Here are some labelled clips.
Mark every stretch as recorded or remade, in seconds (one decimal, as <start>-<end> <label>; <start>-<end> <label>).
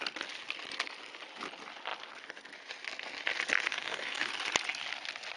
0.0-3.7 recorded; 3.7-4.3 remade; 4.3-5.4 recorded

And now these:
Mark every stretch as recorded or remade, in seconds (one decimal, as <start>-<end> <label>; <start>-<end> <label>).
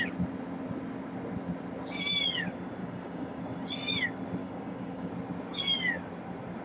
0.0-2.8 recorded; 2.8-3.4 remade; 3.4-4.4 recorded; 4.4-5.1 remade; 5.1-6.6 recorded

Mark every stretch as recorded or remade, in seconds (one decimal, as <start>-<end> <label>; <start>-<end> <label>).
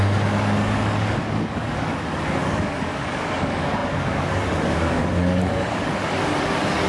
0.0-6.9 remade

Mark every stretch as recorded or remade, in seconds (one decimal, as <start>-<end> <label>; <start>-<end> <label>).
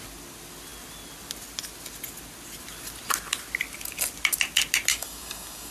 0.0-4.9 recorded; 4.9-5.7 remade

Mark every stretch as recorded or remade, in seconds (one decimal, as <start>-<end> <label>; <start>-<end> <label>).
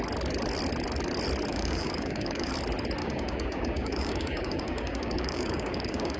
0.0-1.5 recorded; 1.5-2.5 remade; 2.5-3.0 recorded; 3.0-6.2 remade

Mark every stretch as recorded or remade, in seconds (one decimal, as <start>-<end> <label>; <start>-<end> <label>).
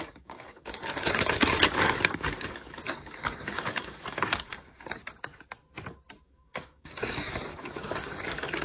0.0-5.0 remade; 5.0-6.2 recorded; 6.2-8.6 remade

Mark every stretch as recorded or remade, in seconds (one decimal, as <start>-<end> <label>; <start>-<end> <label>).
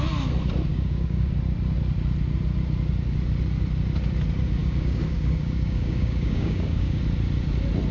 0.0-0.7 recorded; 0.7-1.3 remade; 1.3-4.6 recorded; 4.6-7.0 remade; 7.0-7.9 recorded